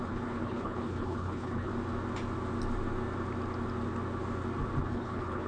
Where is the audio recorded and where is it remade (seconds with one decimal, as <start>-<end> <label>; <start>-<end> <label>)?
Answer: 0.0-1.7 remade; 1.7-4.8 recorded; 4.8-5.5 remade